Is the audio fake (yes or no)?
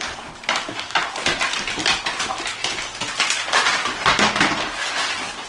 no